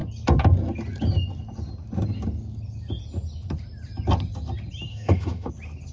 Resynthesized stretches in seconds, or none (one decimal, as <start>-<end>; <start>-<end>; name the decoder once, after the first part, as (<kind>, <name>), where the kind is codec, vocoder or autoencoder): 4.9-5.5 (autoencoder, DAC-VAE)